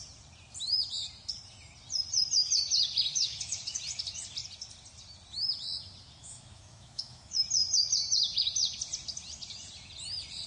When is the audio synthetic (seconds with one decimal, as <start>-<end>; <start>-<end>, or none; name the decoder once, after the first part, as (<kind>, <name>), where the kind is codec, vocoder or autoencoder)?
3.1-3.6 (autoencoder, DAC-VAE); 6.2-7.4